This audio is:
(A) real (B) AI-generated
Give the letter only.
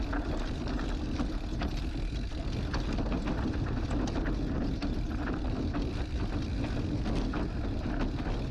A